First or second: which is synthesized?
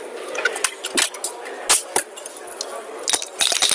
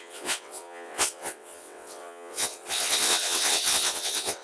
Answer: second